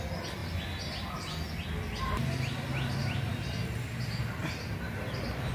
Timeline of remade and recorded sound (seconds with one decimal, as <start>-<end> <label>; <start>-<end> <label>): 0.0-4.4 recorded; 4.4-5.5 remade